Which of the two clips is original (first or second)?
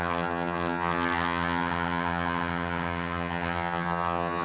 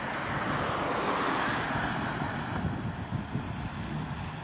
second